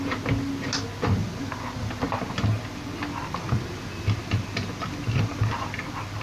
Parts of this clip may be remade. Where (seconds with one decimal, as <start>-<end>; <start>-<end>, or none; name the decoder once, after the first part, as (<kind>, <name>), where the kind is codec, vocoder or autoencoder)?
1.2-1.9 (vocoder, BigVGAN v2); 3.2-5.8